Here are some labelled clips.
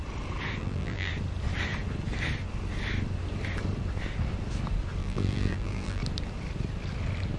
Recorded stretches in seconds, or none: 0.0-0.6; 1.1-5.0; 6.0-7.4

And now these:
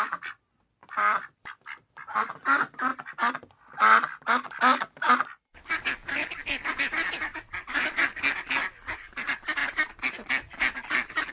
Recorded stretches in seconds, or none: 0.0-0.8; 1.9-2.9; 4.6-6.0; 7.1-11.3

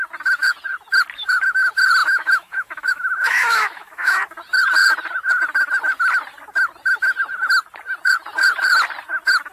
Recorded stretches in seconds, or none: 0.0-2.0; 4.2-9.5

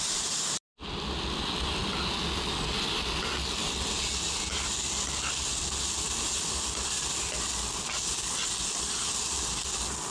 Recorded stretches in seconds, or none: 0.0-10.1